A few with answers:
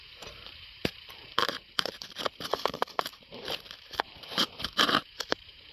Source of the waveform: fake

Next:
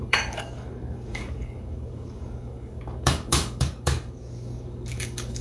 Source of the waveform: fake